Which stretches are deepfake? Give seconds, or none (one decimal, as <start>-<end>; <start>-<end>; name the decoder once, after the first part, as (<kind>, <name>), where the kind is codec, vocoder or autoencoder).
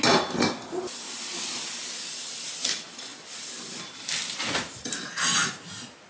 none